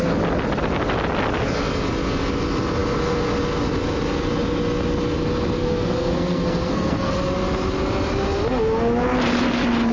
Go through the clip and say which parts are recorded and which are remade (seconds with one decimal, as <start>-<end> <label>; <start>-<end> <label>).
0.0-5.6 recorded; 5.6-7.1 remade; 7.1-9.9 recorded

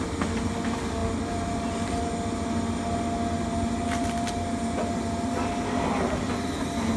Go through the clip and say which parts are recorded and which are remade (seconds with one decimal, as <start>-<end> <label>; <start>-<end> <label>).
0.0-7.0 recorded

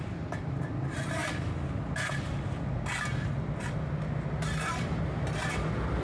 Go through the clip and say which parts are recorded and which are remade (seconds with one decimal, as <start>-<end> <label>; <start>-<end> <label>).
0.0-6.0 recorded

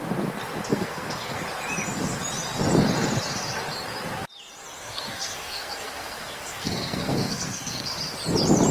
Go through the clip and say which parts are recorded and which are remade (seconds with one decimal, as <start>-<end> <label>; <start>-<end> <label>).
0.0-0.7 recorded; 0.7-1.4 remade; 1.4-4.8 recorded; 4.8-7.9 remade; 7.9-8.7 recorded